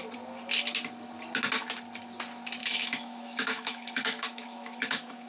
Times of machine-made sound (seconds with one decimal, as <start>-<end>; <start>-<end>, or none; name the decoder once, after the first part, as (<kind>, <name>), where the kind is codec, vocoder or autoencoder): 2.6-5.3 (autoencoder, DAC-VAE)